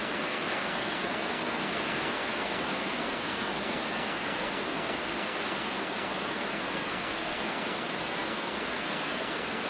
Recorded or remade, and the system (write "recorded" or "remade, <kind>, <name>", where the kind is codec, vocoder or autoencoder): remade, codec, SNAC